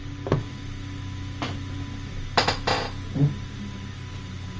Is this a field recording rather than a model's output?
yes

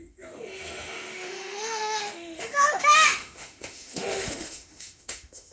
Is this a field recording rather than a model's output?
no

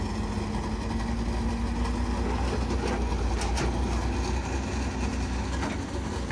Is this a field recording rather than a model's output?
yes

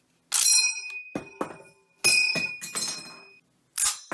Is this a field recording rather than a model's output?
yes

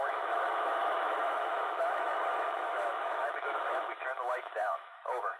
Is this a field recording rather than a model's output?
no